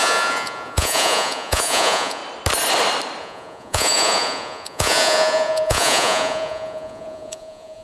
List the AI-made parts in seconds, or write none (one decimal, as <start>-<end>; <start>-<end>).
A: 0.0-2.2; 3.2-7.8